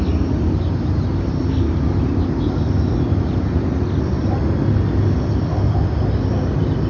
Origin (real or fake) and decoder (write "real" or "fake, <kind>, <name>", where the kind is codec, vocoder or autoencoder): real